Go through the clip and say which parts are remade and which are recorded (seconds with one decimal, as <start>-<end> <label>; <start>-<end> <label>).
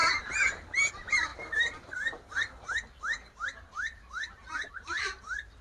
0.0-0.9 recorded; 0.9-5.6 remade